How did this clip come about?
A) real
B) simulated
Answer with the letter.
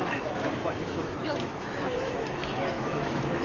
B